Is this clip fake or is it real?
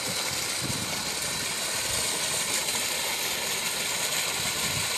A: real